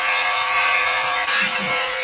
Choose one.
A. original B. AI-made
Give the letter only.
B